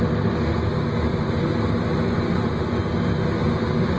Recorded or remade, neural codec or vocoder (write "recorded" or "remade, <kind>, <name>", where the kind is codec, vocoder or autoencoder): recorded